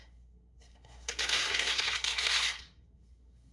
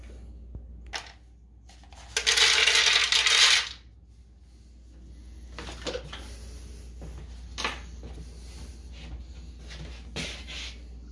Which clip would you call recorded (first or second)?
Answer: second